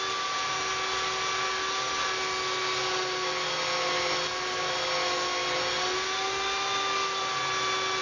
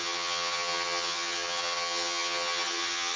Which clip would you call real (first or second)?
first